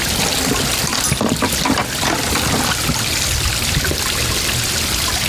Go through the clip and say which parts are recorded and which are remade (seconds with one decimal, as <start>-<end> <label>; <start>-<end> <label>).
0.0-1.8 recorded; 1.8-4.3 remade; 4.3-5.3 recorded